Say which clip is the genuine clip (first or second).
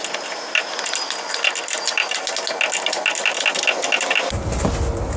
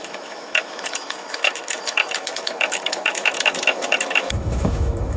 first